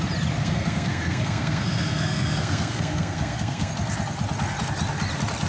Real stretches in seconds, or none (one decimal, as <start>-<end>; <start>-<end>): 0.0-0.4; 3.7-5.5